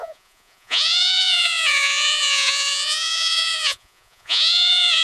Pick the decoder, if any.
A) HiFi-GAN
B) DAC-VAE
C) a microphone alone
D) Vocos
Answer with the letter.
D